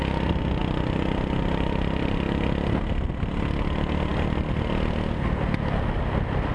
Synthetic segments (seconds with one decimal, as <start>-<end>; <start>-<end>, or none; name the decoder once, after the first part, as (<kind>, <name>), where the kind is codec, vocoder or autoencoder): none